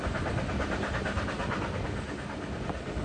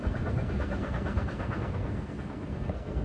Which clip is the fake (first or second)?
second